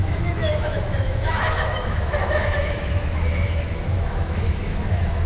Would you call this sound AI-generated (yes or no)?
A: yes